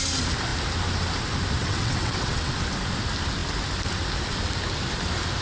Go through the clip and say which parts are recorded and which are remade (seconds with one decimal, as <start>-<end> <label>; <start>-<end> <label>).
0.0-1.6 recorded; 1.6-2.5 remade; 2.5-5.4 recorded